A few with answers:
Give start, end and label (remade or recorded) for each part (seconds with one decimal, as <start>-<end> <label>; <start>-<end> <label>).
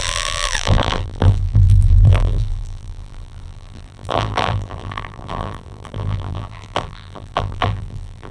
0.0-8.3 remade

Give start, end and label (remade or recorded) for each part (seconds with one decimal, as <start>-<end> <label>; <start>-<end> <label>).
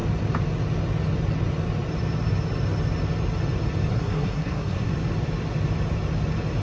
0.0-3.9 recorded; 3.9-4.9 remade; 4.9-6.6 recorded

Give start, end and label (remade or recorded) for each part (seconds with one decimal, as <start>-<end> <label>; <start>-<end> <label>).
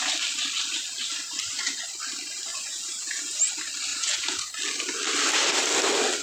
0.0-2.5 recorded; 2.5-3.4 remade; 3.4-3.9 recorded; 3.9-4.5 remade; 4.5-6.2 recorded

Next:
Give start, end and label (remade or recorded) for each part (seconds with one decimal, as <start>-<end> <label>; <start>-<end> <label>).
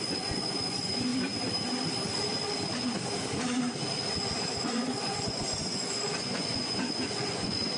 0.0-1.1 remade; 1.1-4.6 recorded; 4.6-7.8 remade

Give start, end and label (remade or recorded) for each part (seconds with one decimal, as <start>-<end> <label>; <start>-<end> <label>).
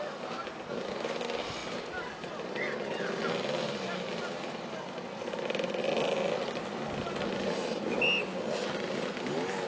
0.0-9.7 recorded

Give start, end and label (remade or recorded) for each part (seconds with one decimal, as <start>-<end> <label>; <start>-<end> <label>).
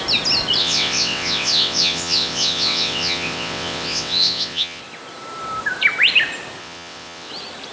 0.0-0.6 recorded; 0.6-4.8 remade; 4.8-6.6 recorded; 6.6-7.3 remade; 7.3-7.7 recorded